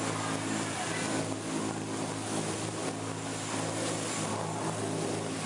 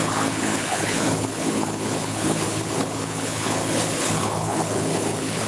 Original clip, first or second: first